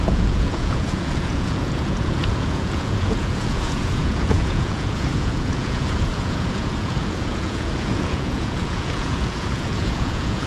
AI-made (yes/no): yes